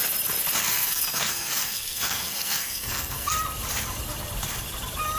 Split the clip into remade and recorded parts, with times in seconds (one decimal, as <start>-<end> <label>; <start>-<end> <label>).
0.0-0.6 recorded; 0.6-3.3 remade; 3.3-5.2 recorded